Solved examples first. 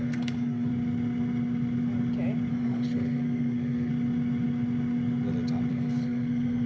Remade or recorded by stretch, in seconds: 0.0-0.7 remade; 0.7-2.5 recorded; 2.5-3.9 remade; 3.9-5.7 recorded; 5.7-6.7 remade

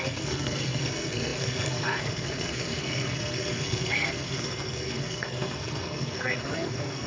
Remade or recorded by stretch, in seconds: 0.0-7.1 remade